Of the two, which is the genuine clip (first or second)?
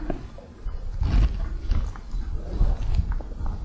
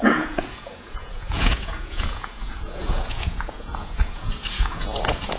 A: first